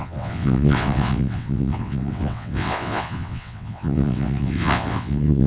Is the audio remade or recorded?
remade